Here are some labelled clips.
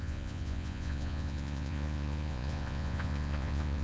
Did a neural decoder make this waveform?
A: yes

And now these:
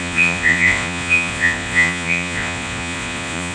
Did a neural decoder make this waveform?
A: yes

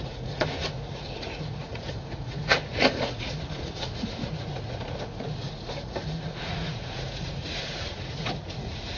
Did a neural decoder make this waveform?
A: yes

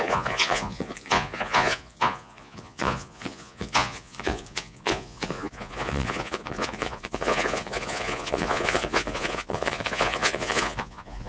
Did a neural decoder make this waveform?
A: yes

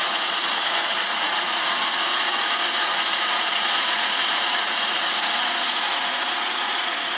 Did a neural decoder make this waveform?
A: yes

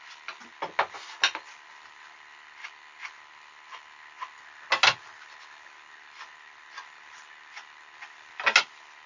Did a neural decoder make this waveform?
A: no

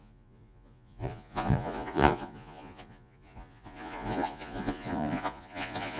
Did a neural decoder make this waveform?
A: yes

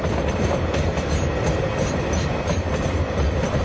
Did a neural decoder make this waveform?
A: no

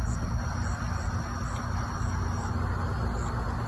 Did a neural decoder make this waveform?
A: no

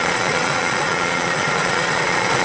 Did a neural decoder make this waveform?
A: yes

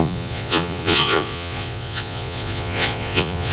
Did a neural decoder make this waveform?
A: yes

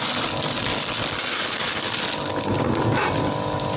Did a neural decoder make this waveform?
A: no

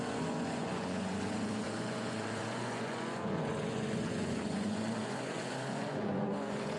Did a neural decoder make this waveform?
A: yes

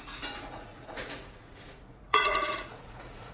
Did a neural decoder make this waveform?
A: yes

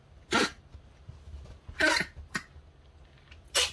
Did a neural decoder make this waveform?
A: no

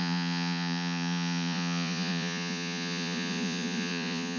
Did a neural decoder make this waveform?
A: yes